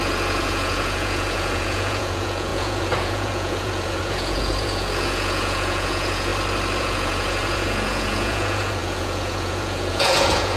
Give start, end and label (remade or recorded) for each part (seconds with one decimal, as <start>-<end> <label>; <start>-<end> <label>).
0.0-6.3 remade; 6.3-6.8 recorded; 6.8-10.6 remade